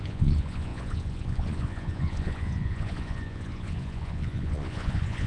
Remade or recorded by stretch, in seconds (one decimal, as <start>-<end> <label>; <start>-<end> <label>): 0.0-5.3 remade